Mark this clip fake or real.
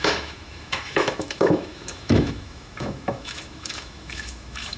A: fake